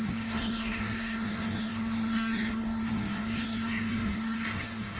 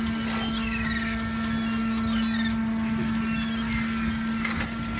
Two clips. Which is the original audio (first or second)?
second